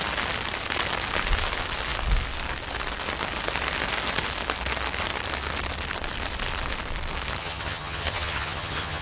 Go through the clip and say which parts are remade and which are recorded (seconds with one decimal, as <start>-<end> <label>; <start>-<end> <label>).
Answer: 0.0-7.4 recorded; 7.4-9.0 remade